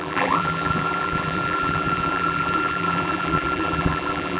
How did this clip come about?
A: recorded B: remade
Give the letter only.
B